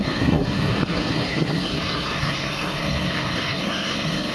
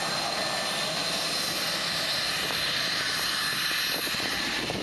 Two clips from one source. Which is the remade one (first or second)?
first